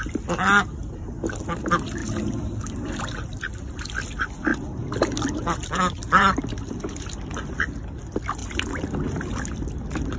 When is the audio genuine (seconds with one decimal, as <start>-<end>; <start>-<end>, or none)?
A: 0.0-10.2